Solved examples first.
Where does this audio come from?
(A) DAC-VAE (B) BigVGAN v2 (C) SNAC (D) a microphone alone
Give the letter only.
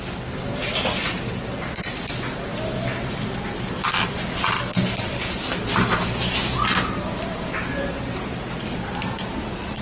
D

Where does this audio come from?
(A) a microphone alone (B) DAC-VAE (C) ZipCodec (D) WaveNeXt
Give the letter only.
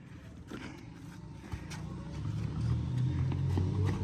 A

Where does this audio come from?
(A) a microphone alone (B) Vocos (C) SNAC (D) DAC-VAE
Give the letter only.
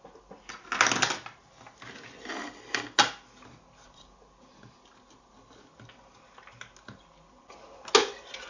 A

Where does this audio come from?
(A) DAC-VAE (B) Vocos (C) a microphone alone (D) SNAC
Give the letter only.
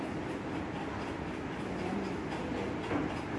C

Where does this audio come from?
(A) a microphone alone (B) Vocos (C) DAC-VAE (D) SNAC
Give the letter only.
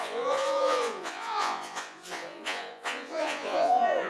B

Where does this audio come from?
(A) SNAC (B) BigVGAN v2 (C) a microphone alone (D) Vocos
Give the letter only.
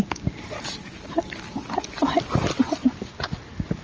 C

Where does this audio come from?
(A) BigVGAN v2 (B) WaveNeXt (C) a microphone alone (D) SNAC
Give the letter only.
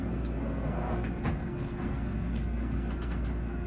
D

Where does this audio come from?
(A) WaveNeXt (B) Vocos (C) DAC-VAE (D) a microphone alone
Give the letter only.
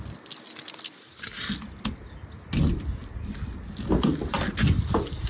D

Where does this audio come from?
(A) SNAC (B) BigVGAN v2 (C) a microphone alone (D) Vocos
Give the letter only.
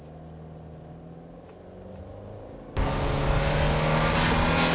C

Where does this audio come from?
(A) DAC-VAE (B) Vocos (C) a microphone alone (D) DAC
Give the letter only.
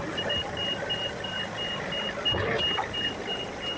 C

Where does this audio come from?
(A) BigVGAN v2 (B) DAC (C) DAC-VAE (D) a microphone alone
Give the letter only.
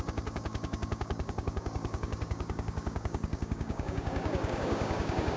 B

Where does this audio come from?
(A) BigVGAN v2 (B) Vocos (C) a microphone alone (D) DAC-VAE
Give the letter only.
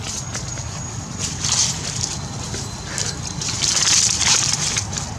C